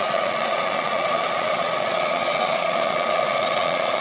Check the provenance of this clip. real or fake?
fake